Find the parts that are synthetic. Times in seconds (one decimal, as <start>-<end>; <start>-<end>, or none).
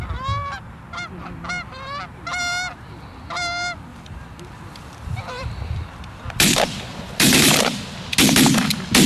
0.4-1.1; 3.9-7.8